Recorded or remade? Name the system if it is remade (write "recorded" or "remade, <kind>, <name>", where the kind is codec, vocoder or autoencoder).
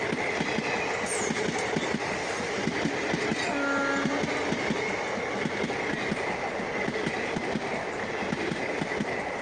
recorded